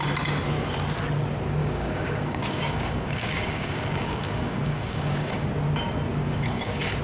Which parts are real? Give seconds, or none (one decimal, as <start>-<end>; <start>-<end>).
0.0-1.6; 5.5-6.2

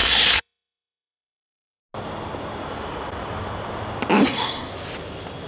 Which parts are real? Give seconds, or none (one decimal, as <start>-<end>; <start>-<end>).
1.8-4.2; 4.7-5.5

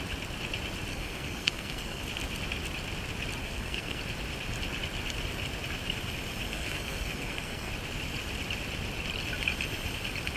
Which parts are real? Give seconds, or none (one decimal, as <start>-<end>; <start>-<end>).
0.0-0.9; 2.0-3.4; 4.0-6.5; 7.7-10.4

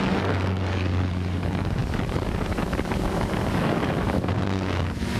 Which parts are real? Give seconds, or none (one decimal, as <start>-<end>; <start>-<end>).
none

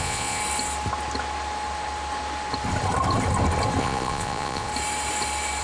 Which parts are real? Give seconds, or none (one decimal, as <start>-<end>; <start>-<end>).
0.4-3.8; 4.7-5.6

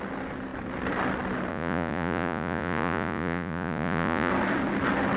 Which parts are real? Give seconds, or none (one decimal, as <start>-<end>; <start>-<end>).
0.0-1.5; 4.3-5.2

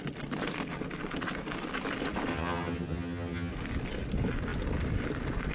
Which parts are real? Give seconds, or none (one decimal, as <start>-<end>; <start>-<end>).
0.0-2.3; 3.5-5.5

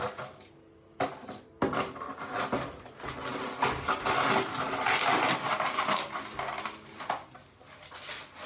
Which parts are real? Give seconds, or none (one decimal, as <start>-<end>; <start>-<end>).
0.0-8.5